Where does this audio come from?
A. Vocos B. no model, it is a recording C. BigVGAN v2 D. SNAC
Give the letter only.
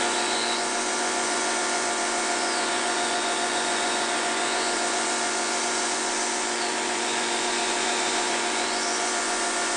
A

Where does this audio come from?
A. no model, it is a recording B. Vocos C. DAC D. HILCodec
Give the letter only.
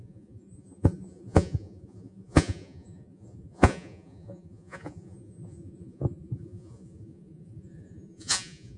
B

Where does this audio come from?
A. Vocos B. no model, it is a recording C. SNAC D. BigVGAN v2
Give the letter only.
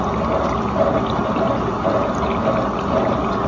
B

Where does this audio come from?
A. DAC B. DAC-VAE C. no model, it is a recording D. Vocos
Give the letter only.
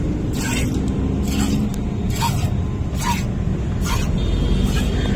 C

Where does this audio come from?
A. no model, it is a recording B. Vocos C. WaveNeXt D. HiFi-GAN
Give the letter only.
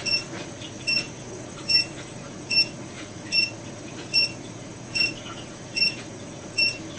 B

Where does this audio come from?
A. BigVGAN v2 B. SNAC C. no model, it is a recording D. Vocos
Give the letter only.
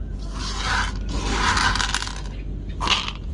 C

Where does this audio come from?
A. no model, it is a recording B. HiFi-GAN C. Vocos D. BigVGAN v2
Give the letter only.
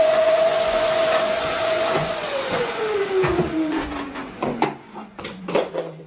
C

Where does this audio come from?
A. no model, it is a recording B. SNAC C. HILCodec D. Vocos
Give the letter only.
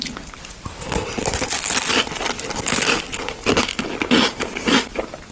A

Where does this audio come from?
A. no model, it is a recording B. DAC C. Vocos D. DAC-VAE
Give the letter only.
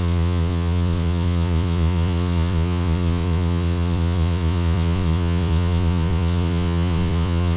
C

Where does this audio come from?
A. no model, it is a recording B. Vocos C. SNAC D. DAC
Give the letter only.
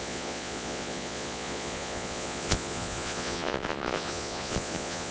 B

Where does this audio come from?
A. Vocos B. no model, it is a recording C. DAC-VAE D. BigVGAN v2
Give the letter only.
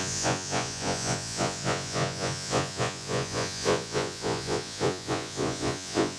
A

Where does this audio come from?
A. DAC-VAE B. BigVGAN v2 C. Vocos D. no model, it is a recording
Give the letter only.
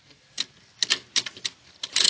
D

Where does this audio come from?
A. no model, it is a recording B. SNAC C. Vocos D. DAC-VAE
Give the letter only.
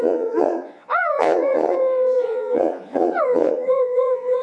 C